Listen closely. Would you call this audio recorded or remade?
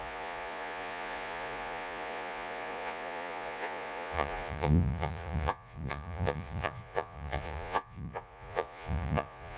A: remade